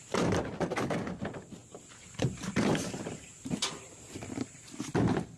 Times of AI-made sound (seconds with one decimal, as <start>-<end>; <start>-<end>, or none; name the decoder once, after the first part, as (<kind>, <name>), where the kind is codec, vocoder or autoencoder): 1.6-4.8 (vocoder, BigVGAN v2)